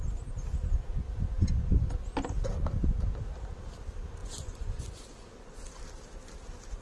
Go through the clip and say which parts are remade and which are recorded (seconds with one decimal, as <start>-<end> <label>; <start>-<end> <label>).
0.0-4.2 recorded; 4.2-5.5 remade; 5.5-6.8 recorded